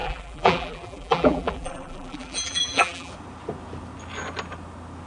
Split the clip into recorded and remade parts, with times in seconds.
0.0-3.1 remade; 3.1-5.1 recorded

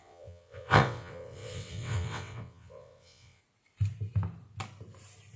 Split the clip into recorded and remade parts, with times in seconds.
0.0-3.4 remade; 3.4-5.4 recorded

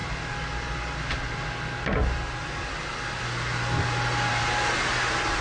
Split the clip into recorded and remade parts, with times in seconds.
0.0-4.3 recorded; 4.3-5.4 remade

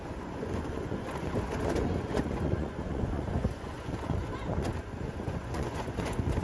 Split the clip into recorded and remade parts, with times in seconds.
0.0-6.4 remade